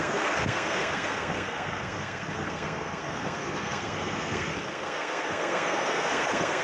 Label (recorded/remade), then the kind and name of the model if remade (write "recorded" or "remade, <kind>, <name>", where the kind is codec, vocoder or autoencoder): remade, codec, SNAC